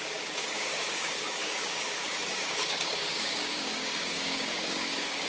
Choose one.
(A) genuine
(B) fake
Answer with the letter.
B